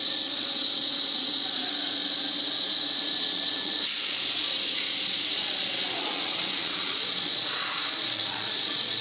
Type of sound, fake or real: fake